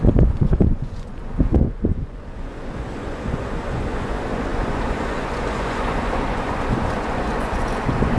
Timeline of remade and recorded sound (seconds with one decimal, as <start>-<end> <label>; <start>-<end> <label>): 0.0-8.2 remade

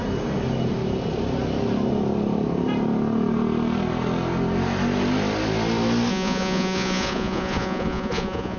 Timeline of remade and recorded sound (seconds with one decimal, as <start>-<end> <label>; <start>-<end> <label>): 0.0-6.1 recorded; 6.1-8.6 remade

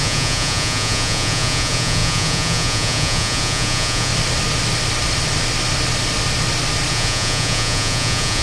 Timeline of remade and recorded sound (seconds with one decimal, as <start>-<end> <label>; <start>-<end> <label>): 0.0-4.1 remade; 4.1-6.9 recorded; 6.9-8.4 remade

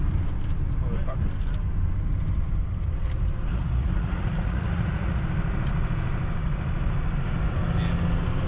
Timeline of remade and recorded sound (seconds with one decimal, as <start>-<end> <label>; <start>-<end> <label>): 0.0-3.5 recorded; 3.5-5.2 remade; 5.2-8.5 recorded